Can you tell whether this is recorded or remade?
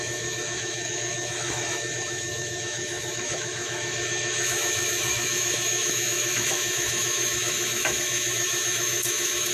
remade